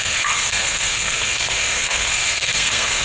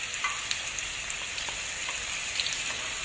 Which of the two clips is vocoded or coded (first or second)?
first